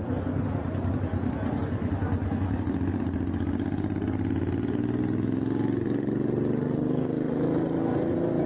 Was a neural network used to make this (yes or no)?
no